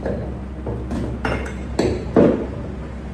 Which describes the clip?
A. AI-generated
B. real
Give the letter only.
B